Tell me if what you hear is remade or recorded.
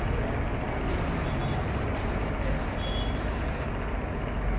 recorded